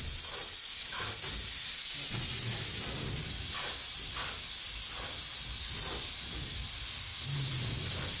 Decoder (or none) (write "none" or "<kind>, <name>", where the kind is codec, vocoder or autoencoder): none